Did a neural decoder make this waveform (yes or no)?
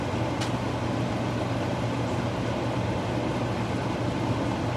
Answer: no